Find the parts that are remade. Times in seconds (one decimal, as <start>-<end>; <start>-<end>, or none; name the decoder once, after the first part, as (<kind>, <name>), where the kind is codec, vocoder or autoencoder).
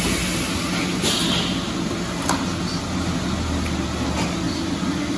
none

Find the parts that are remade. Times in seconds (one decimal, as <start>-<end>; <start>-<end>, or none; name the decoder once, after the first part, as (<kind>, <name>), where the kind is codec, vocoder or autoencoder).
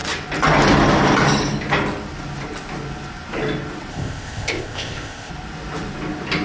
3.9-5.3 (codec, ZipCodec)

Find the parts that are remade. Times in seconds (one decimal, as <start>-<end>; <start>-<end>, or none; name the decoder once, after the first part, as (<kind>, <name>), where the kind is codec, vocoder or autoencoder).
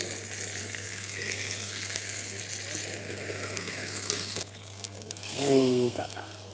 0.6-2.4 (codec, SNAC); 3.0-6.5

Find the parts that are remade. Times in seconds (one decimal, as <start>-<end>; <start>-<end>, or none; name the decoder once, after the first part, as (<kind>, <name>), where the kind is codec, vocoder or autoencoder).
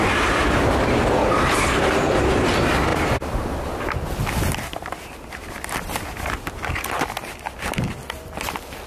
0.4-2.2 (vocoder, BigVGAN v2)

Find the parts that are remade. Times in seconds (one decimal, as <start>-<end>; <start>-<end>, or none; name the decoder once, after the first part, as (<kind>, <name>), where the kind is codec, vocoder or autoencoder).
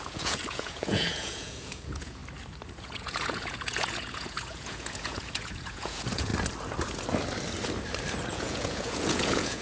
0.0-2.2 (vocoder, Vocos); 2.8-6.3; 8.3-9.6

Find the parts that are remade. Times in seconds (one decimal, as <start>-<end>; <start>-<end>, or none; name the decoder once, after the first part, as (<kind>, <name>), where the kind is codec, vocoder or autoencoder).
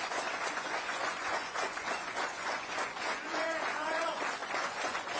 0.0-5.2 (vocoder, Vocos)